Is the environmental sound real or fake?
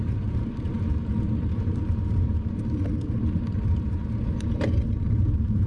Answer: fake